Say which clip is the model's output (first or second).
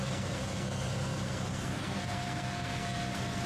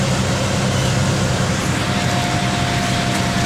first